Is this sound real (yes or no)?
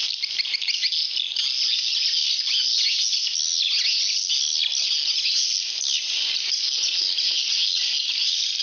yes